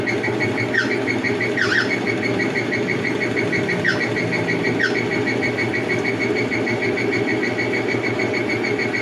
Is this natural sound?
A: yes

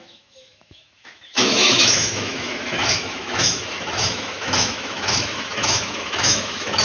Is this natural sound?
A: no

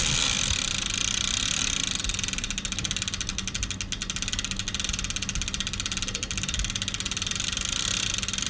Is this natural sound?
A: yes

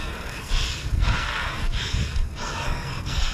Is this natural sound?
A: no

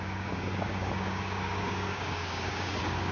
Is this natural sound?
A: no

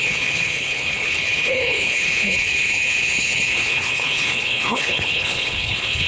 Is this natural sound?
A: no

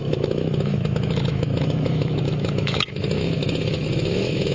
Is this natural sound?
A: no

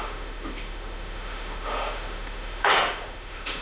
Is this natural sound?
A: no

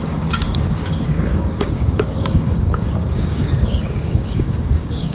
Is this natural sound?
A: no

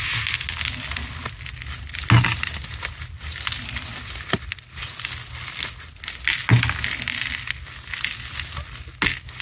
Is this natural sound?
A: yes